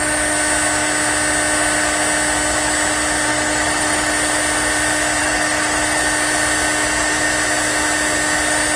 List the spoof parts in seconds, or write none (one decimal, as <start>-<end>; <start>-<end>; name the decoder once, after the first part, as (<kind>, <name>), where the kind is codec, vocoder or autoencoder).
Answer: 3.3-4.1 (autoencoder, DAC-VAE); 5.2-6.0